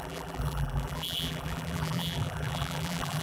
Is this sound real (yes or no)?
no